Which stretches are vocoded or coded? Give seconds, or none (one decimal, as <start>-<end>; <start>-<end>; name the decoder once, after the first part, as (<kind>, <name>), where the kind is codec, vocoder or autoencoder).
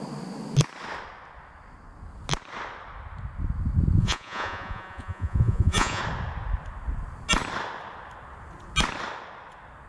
4.0-6.0 (vocoder, Vocos)